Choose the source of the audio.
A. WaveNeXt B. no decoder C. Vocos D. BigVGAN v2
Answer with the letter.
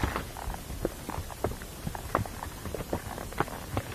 B